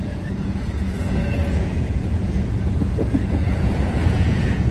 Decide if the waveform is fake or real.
fake